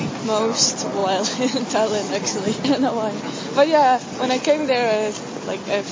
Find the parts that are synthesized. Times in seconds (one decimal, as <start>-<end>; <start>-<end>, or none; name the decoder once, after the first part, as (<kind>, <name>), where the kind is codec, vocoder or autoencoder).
none